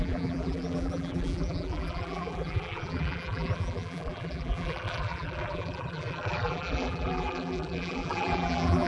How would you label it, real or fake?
fake